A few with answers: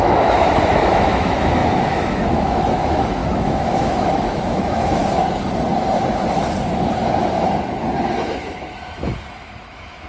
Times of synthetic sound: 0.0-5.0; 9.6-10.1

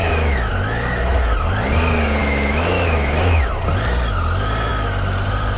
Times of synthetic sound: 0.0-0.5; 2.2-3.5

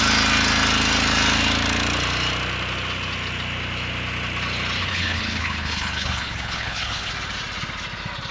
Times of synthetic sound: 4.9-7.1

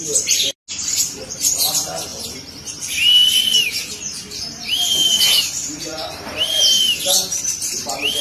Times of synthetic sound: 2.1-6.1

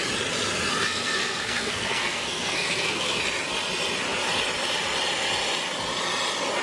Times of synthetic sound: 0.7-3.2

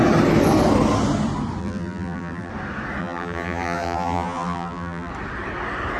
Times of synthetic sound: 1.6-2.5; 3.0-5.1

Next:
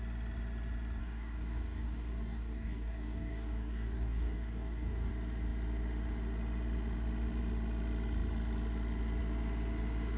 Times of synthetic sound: 1.0-5.1